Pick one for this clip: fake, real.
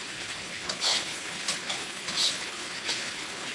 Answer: fake